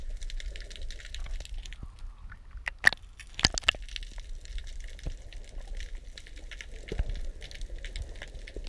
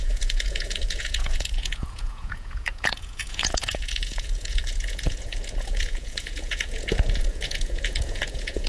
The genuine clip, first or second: first